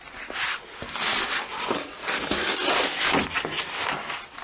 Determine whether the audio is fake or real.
real